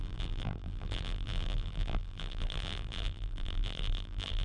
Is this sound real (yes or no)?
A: no